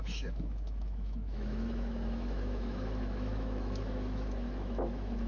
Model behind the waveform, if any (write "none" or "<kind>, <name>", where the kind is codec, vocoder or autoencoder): autoencoder, DAC-VAE